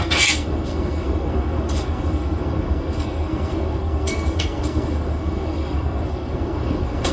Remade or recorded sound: remade